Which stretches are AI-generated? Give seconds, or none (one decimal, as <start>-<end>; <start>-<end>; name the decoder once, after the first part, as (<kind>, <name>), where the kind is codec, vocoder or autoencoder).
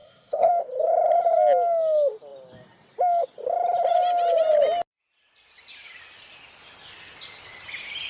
0.0-0.5 (codec, SNAC)